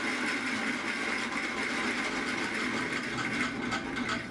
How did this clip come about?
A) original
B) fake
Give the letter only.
A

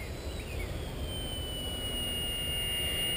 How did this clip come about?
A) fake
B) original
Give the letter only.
B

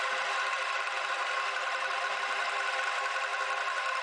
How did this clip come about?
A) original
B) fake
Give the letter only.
A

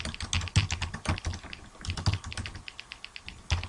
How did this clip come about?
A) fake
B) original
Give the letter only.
B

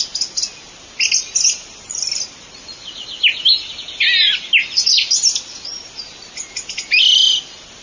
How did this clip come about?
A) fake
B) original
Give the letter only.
B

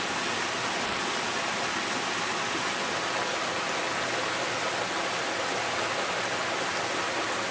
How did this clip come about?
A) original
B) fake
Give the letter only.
A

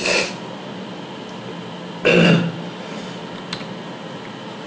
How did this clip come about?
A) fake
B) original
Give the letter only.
B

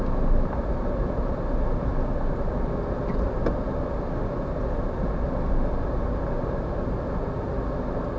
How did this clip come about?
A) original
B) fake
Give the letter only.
A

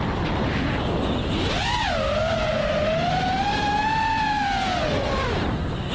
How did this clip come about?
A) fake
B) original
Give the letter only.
B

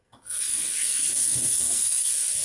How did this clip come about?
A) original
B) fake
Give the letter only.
B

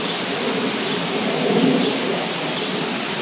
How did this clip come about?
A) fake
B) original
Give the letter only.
B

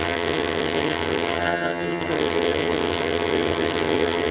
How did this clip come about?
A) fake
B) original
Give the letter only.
A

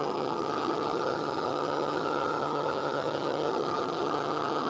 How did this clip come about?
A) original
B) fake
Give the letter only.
B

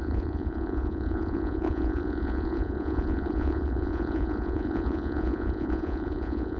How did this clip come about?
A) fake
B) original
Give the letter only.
A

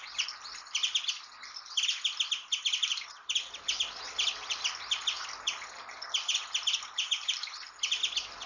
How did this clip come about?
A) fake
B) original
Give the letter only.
A